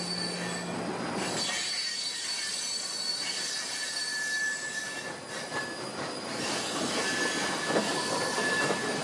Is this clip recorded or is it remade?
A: recorded